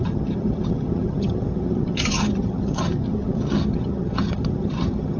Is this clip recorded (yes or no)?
no